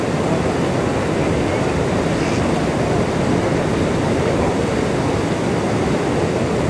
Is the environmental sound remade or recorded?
recorded